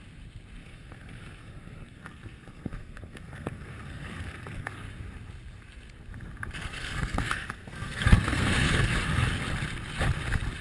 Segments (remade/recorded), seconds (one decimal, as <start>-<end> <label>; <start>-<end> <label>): 0.0-0.6 recorded; 0.6-4.9 remade; 4.9-6.6 recorded; 6.6-8.9 remade; 8.9-10.6 recorded